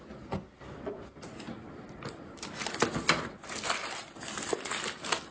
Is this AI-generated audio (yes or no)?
no